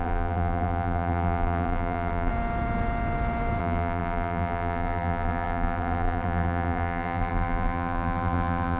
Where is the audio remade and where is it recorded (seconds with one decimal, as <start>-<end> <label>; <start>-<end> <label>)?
0.0-2.3 remade; 2.3-3.6 recorded; 3.6-8.8 remade